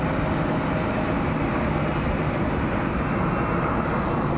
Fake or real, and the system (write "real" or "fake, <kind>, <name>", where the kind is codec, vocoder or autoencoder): real